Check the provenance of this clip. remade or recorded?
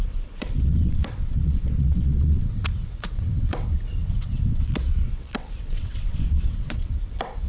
remade